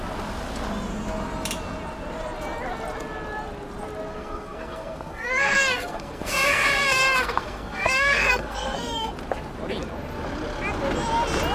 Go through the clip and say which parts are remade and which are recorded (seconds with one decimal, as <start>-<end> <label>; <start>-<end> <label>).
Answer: 0.0-4.1 recorded; 4.1-9.1 remade; 9.1-11.5 recorded